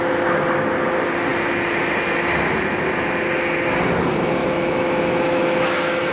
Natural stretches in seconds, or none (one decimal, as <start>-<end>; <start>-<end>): 0.0-4.4